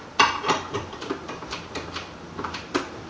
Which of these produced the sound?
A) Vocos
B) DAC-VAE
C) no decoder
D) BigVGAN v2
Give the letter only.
D